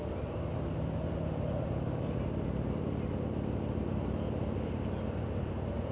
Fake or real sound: real